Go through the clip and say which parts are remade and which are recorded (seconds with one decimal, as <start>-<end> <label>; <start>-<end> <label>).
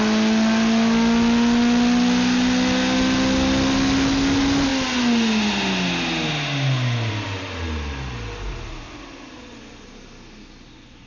0.0-11.1 recorded